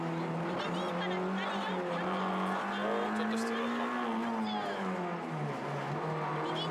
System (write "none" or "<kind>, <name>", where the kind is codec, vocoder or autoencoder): none